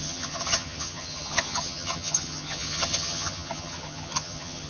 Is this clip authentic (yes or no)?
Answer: no